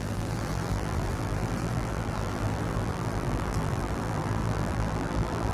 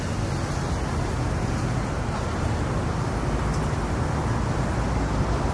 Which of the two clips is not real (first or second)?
first